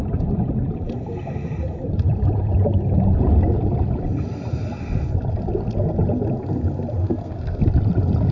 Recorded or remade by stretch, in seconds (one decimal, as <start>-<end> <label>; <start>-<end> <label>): 0.0-7.0 recorded; 7.0-7.6 remade; 7.6-8.3 recorded